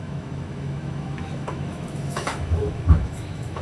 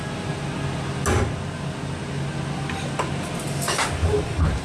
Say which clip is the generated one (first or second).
first